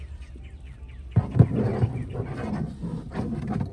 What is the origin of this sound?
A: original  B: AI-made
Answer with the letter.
A